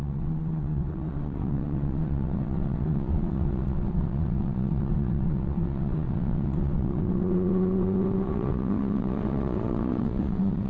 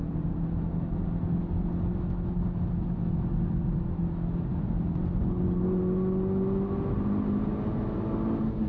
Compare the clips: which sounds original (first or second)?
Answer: second